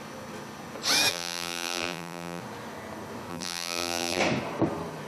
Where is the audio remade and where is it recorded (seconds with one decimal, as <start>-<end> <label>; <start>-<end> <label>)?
0.0-1.1 recorded; 1.1-2.4 remade; 2.4-3.3 recorded; 3.3-4.2 remade; 4.2-5.1 recorded